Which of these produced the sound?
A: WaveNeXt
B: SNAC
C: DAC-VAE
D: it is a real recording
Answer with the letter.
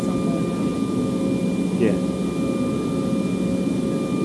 D